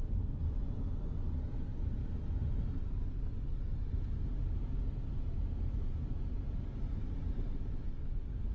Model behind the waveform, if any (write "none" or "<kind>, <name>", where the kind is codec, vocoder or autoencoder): none